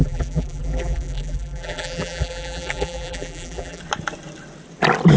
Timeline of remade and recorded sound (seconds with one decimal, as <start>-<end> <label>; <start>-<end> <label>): 0.0-3.8 remade; 3.8-5.2 recorded